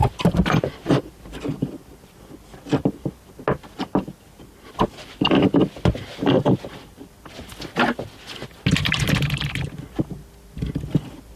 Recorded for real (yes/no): yes